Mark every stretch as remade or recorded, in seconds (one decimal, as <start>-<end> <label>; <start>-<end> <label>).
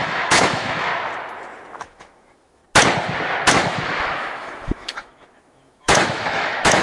0.0-0.9 remade; 0.9-1.8 recorded; 1.8-2.6 remade; 2.6-3.5 recorded; 3.5-6.8 remade